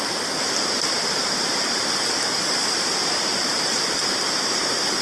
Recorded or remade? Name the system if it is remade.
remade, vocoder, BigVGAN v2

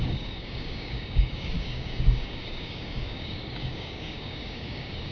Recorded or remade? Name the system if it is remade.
remade, codec, DAC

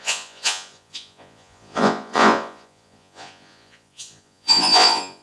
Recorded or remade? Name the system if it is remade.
remade, vocoder, Vocos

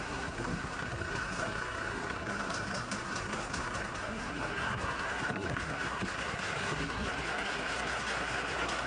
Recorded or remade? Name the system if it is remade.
remade, codec, SNAC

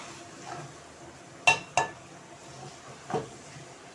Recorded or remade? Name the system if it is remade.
recorded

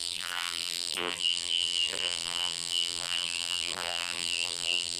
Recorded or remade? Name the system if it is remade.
remade, vocoder, BigVGAN v2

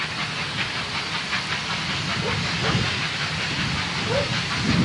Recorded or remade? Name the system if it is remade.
recorded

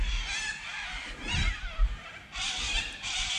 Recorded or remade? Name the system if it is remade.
recorded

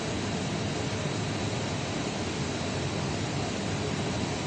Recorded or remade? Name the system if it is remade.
recorded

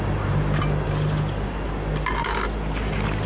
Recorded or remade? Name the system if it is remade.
recorded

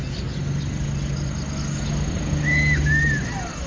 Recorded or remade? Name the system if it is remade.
recorded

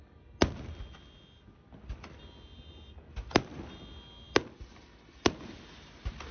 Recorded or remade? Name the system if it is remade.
recorded